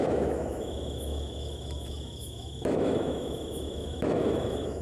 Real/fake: fake